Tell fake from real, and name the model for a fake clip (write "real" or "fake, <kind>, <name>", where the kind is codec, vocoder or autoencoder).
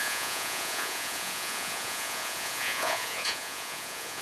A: fake, vocoder, Vocos